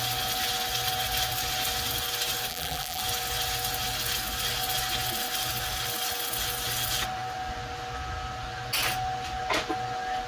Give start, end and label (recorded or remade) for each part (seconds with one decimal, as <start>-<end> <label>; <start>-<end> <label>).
0.0-2.5 recorded; 2.5-3.0 remade; 3.0-10.3 recorded